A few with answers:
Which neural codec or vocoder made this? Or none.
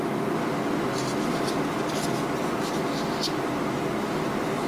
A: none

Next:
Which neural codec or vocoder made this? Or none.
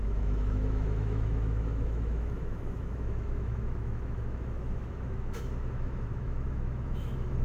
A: autoencoder, DAC-VAE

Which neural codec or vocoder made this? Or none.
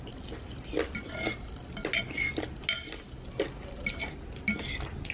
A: none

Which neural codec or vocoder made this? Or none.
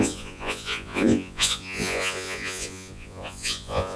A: vocoder, Vocos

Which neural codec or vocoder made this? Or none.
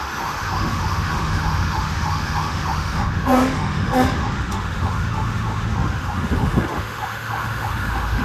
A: autoencoder, DAC-VAE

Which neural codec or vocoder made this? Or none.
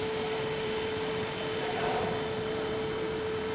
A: none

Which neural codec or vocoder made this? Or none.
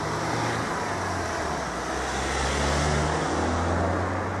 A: none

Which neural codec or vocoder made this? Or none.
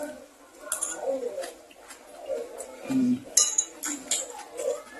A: none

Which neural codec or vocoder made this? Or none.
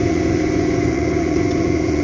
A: vocoder, Vocos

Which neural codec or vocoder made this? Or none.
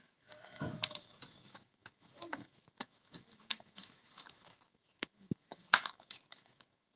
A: autoencoder, DAC-VAE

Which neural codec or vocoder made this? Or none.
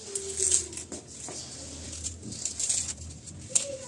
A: none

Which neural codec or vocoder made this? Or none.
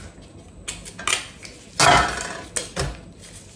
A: none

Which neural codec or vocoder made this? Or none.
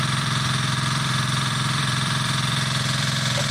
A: vocoder, BigVGAN v2